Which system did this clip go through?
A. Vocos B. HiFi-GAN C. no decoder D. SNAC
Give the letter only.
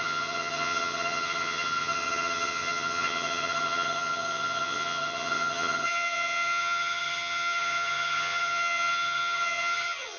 B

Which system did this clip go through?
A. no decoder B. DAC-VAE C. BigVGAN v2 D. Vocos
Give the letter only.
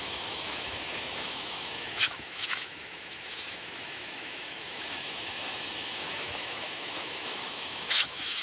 B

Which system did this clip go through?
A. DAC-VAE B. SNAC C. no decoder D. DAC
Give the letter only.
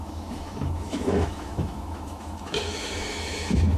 A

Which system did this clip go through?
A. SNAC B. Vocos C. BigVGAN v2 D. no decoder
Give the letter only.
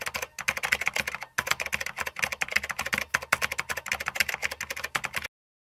D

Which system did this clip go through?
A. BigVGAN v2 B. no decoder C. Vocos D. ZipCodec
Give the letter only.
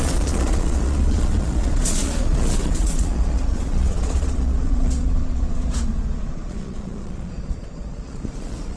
C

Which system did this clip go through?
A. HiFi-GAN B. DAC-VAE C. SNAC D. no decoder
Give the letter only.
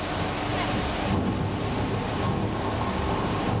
D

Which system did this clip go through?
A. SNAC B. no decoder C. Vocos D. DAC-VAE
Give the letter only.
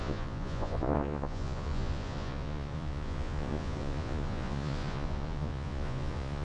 C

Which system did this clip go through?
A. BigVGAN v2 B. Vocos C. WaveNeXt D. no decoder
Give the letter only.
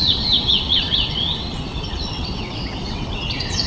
C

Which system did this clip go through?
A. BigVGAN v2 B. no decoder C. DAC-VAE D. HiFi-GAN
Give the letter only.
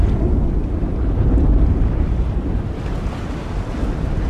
B